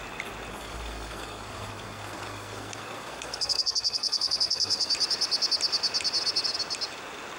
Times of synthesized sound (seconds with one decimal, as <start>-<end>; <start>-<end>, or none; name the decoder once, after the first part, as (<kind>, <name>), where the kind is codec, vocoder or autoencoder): 0.5-4.9 (codec, SNAC)